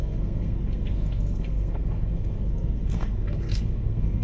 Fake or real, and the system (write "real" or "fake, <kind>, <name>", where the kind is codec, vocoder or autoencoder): fake, codec, SNAC